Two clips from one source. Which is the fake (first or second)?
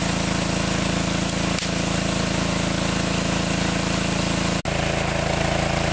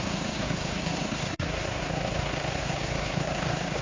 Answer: second